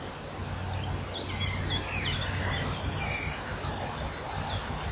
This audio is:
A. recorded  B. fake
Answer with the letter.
A